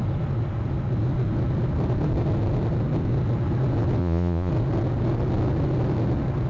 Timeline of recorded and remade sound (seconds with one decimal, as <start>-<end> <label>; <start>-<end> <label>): 0.0-4.0 recorded; 4.0-4.5 remade; 4.5-6.5 recorded